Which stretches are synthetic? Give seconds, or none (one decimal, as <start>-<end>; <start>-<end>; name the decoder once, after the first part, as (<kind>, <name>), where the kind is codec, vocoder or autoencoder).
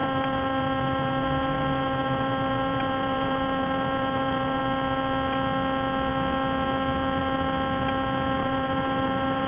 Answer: 0.0-4.6 (vocoder, BigVGAN v2); 8.4-9.5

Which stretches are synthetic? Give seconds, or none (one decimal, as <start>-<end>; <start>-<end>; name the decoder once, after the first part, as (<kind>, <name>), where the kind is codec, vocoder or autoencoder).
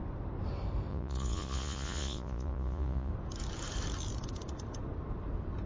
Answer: 0.9-3.1 (vocoder, Vocos)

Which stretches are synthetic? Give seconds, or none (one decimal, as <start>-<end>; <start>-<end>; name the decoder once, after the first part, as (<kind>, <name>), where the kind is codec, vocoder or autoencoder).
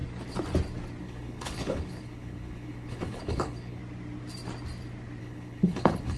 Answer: 1.0-3.8 (codec, HILCodec); 5.2-6.2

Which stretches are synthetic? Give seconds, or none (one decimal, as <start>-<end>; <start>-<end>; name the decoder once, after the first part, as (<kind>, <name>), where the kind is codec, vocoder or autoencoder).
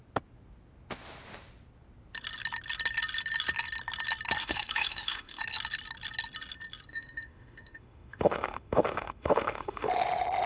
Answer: 4.4-5.4 (autoencoder, DAC-VAE); 6.9-9.9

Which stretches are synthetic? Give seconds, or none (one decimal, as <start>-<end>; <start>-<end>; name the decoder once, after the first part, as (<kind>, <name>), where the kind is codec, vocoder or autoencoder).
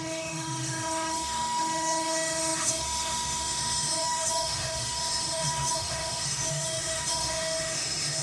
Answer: 0.0-8.2 (autoencoder, DAC-VAE)